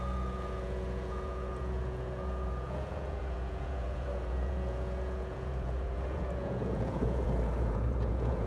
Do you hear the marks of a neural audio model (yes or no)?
yes